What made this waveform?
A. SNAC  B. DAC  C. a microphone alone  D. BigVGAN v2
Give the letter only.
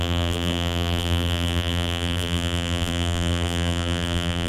D